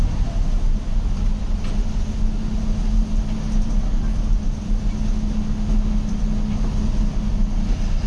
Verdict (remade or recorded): recorded